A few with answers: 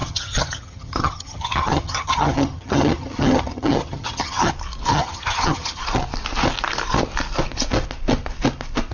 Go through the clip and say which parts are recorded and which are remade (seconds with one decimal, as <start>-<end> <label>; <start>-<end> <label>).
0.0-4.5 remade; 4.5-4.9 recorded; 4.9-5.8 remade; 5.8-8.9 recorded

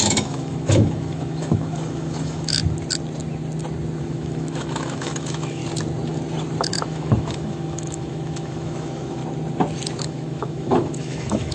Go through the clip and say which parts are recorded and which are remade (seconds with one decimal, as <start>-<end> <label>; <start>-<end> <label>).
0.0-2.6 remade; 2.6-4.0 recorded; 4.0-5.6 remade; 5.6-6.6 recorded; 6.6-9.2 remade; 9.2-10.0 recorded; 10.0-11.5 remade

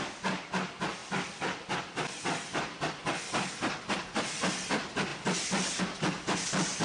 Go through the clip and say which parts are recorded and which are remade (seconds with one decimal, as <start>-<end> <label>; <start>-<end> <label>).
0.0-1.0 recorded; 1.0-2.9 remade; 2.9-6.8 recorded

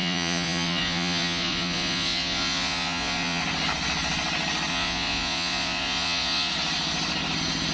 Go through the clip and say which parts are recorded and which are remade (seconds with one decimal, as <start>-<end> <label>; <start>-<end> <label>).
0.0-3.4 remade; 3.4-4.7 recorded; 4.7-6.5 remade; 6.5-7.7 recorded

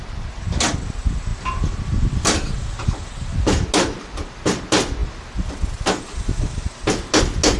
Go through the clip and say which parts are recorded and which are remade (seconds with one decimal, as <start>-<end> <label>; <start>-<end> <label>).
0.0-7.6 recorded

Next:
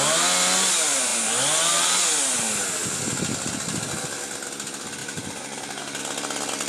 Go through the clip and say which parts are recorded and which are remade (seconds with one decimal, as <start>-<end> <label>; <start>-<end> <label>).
0.0-5.0 recorded; 5.0-6.0 remade; 6.0-6.7 recorded

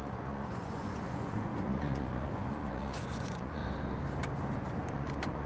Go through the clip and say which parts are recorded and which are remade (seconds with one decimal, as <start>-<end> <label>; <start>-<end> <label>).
0.0-3.6 remade; 3.6-4.9 recorded; 4.9-5.5 remade